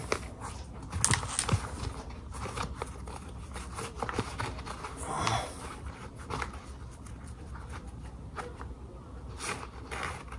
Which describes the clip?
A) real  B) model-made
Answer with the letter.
A